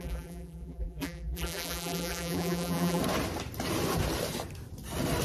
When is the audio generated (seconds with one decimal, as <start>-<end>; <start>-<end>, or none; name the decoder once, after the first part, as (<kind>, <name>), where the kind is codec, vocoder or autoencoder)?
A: 0.0-3.0 (vocoder, BigVGAN v2)